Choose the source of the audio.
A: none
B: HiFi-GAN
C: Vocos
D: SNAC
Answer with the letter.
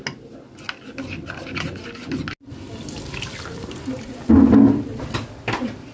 A